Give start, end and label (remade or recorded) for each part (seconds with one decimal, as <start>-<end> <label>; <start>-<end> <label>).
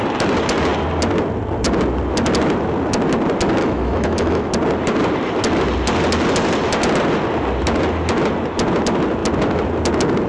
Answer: 0.0-3.6 recorded; 3.6-4.5 remade; 4.5-10.3 recorded